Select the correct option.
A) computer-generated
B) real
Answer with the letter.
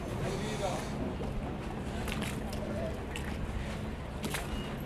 B